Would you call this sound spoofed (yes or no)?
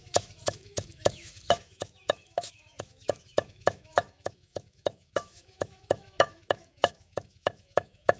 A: yes